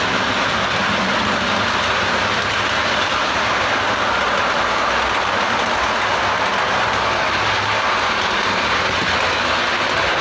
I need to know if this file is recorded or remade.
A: recorded